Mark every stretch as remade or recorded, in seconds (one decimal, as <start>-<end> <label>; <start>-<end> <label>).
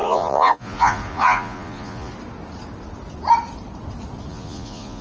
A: 0.0-2.1 remade; 2.1-4.3 recorded; 4.3-5.0 remade